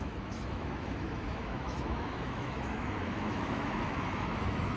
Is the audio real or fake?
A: fake